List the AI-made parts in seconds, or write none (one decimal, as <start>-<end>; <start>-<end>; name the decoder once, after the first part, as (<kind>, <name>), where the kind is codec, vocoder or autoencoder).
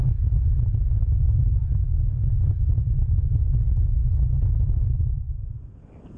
none